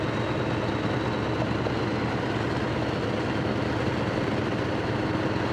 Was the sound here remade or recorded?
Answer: recorded